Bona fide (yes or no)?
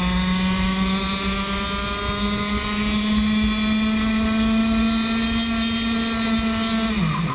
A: yes